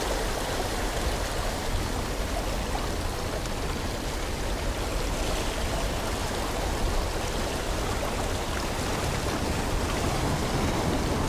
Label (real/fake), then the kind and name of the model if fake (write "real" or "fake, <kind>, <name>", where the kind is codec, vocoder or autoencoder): real